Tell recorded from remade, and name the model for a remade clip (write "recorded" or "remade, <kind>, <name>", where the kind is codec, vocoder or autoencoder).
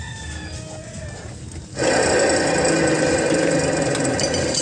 recorded